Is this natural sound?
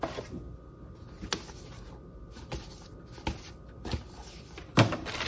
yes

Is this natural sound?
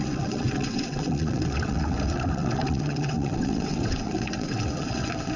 no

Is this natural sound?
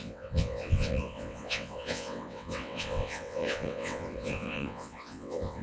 no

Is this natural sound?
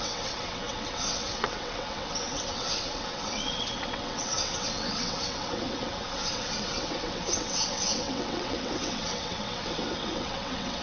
no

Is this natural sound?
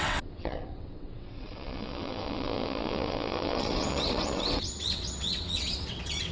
no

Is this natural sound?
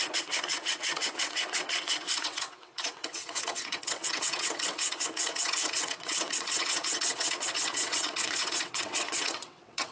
no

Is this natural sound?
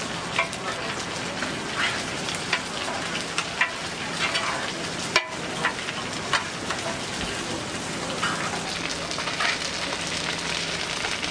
yes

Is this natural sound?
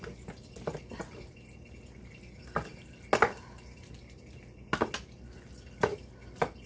yes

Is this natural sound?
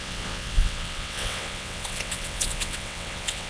no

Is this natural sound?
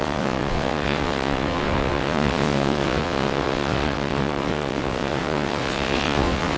no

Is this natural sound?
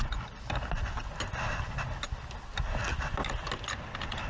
yes